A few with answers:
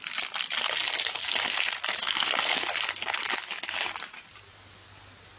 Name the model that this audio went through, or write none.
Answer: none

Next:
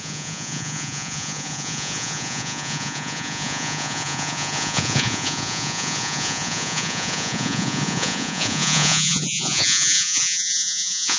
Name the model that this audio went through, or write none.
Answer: vocoder, Vocos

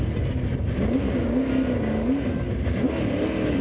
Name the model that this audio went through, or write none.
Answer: none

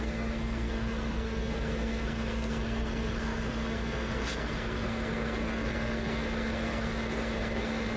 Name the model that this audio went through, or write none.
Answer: codec, SNAC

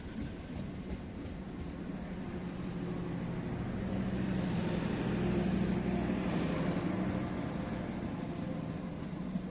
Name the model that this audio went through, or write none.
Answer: none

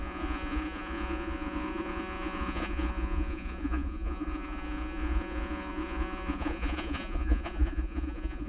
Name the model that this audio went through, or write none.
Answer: vocoder, Vocos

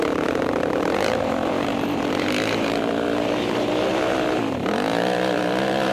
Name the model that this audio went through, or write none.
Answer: vocoder, BigVGAN v2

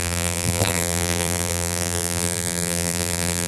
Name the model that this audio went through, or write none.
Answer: vocoder, BigVGAN v2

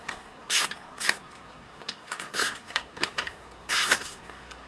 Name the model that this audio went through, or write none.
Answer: codec, SNAC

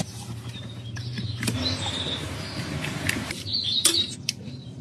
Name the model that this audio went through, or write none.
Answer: vocoder, BigVGAN v2